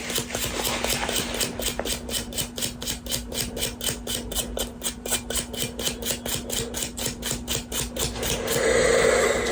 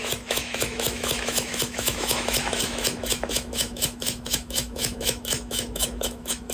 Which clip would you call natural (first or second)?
first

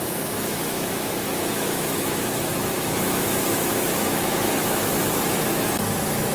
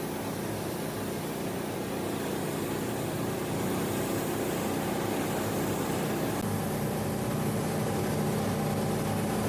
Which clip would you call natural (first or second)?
second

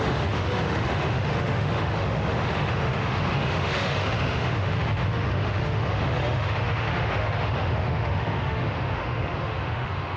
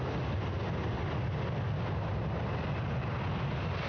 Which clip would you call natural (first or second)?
second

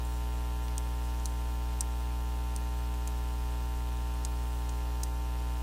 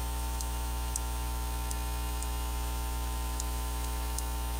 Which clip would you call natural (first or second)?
first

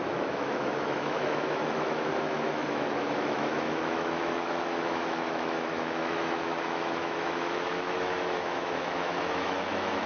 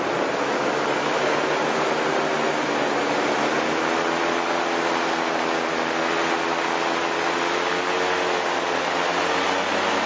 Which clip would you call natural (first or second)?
second